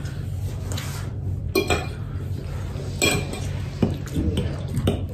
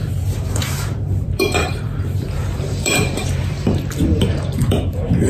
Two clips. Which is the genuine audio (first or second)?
first